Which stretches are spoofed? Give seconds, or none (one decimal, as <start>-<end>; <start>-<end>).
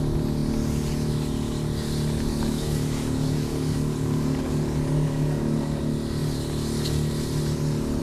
2.3-5.8